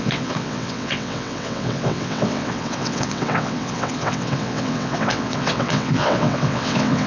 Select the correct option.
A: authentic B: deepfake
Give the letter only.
B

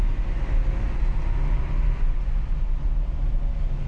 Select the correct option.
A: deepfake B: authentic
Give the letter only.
B